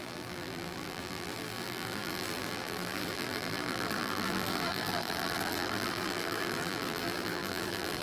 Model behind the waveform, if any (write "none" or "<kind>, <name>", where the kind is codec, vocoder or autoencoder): vocoder, BigVGAN v2